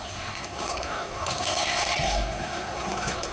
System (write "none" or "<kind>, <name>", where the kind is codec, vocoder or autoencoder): codec, SNAC